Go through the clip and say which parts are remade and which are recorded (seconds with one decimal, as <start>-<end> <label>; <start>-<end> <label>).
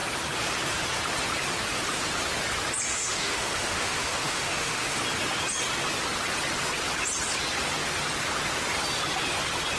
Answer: 0.0-2.9 recorded; 2.9-5.0 remade; 5.0-9.8 recorded